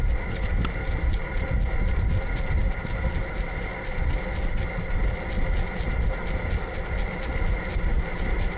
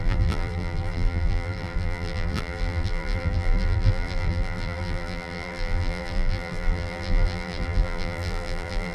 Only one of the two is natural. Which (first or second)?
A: first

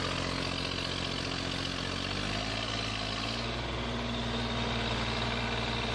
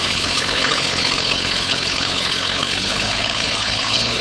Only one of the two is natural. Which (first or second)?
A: first